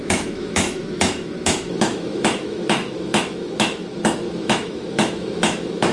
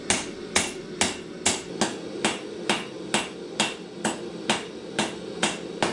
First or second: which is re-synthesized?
first